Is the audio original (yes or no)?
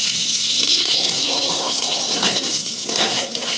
no